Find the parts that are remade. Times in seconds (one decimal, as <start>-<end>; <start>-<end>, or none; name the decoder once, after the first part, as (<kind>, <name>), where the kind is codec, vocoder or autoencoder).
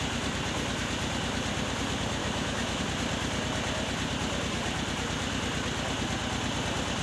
2.2-2.8 (autoencoder, DAC-VAE)